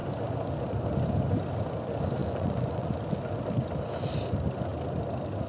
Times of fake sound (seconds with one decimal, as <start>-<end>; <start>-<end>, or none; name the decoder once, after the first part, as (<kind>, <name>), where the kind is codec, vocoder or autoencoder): 2.2-2.9 (vocoder, Vocos)